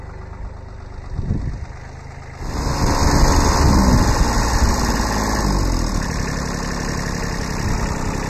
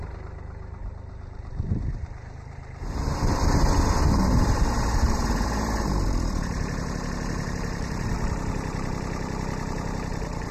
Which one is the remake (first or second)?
second